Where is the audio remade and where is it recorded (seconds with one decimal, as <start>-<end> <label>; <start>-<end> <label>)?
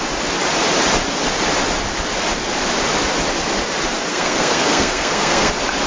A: 0.0-4.1 recorded; 4.1-5.5 remade; 5.5-5.9 recorded